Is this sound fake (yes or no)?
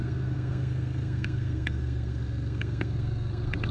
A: yes